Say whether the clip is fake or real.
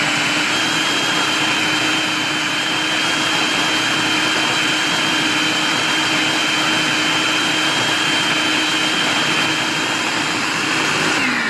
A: real